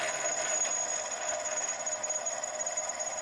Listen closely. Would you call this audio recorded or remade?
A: recorded